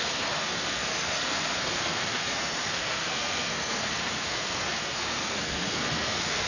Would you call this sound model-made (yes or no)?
yes